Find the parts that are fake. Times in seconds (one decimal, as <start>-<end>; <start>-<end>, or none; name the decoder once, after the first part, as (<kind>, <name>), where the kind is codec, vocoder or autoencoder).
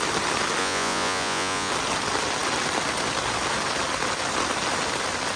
0.6-1.7 (vocoder, Vocos)